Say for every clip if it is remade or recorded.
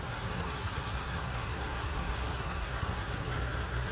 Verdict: remade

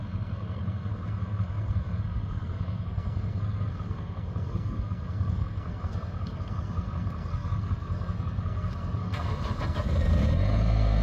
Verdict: remade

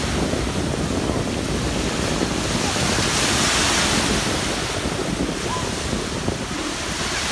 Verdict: recorded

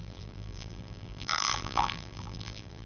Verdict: remade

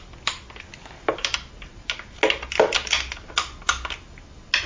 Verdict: recorded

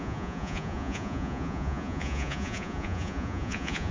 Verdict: remade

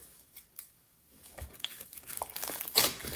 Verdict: remade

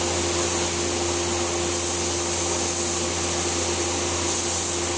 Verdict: recorded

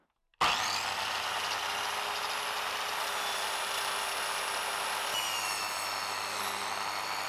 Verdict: recorded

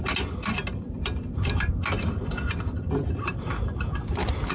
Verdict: recorded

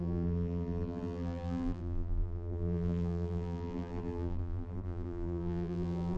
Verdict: remade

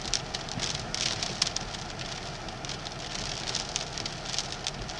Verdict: recorded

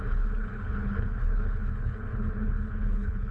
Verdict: remade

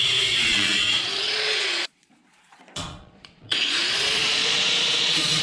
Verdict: remade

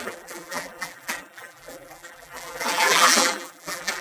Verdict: remade